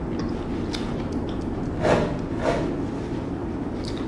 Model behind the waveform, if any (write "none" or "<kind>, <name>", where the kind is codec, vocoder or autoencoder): none